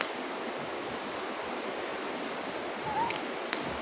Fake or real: real